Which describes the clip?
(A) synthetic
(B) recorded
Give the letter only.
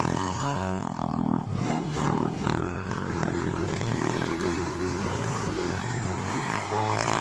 A